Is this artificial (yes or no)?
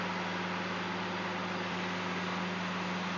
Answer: no